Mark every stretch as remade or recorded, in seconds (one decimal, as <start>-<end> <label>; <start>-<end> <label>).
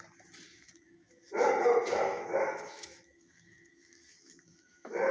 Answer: 0.0-0.5 recorded; 0.5-1.5 remade; 1.5-2.1 recorded; 2.1-5.1 remade